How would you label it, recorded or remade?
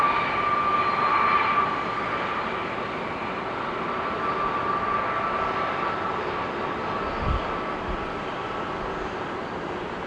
recorded